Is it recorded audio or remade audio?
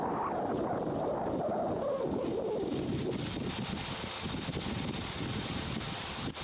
recorded